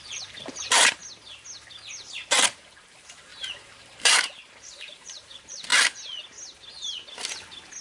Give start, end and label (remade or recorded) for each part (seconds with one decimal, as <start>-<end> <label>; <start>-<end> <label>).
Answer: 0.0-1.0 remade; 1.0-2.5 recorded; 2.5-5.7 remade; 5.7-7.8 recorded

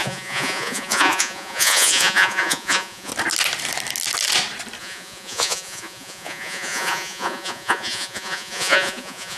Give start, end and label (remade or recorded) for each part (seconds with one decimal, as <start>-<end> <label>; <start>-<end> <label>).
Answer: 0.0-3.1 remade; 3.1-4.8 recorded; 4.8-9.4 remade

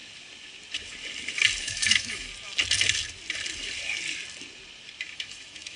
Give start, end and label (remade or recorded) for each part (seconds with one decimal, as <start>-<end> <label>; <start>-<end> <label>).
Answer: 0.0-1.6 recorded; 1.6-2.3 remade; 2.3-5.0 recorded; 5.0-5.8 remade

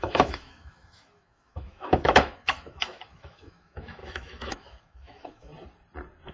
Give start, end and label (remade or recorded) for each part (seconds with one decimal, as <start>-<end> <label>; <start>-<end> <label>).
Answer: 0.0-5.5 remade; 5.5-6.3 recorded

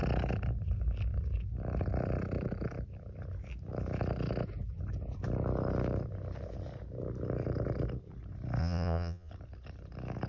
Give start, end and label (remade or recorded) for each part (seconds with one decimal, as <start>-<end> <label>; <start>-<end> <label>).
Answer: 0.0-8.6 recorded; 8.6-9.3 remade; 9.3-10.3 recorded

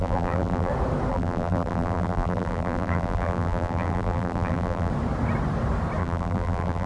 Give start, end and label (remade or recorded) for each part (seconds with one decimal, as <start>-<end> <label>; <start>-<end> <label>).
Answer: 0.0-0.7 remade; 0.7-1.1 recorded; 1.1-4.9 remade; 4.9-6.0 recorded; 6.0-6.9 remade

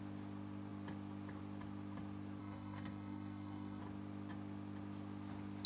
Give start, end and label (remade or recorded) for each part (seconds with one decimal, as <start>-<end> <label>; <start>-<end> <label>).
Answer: 0.0-2.4 recorded; 2.4-3.8 remade; 3.8-5.7 recorded